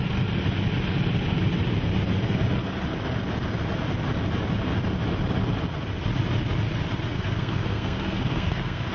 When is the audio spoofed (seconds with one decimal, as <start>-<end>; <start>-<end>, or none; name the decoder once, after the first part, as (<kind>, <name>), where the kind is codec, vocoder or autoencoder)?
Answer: 7.1-8.9 (codec, SNAC)